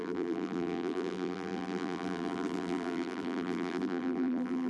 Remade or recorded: remade